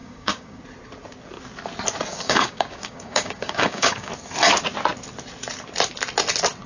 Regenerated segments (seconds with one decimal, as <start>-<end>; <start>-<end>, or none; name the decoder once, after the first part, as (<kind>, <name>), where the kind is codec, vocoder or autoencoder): 0.0-0.6 (codec, DAC); 2.1-4.1